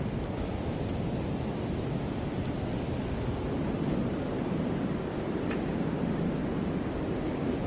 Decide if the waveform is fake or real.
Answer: real